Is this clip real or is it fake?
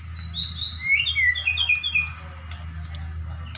real